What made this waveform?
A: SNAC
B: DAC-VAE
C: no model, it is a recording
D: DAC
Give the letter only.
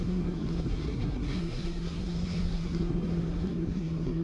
A